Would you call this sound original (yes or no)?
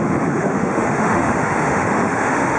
no